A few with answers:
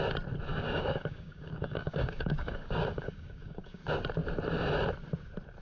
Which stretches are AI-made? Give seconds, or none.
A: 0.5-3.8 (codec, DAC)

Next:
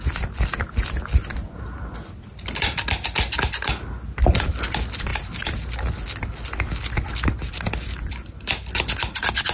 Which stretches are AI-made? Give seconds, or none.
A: none

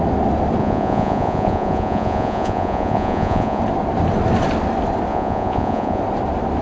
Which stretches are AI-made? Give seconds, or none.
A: 0.6-3.6 (vocoder, Vocos); 5.1-6.0

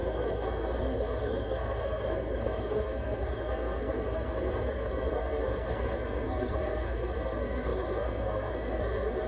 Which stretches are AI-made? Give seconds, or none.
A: 0.0-9.3 (codec, SNAC)

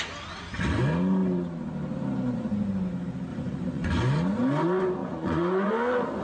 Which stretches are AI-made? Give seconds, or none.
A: 3.3-3.9 (vocoder, Vocos); 5.0-5.7

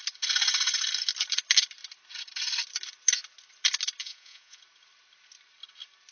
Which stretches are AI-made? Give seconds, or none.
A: 4.0-4.6 (vocoder, Vocos)